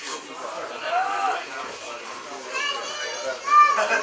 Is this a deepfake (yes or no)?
no